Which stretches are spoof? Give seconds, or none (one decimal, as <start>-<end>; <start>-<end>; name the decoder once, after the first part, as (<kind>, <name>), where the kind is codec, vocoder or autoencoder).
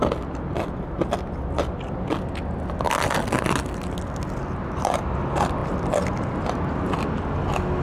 none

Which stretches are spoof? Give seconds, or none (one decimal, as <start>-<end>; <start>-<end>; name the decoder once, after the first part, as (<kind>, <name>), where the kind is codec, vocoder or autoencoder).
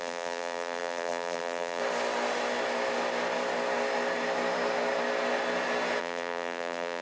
0.0-1.8 (vocoder, BigVGAN v2); 6.0-7.0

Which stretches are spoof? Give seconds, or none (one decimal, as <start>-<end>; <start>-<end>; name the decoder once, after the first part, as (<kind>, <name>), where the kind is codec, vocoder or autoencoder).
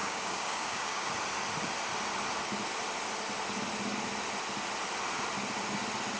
0.0-1.1 (codec, DAC)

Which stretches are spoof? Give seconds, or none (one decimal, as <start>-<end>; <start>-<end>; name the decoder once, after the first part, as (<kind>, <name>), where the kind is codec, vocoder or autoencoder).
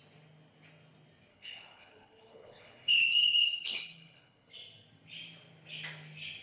1.3-4.5 (codec, HILCodec)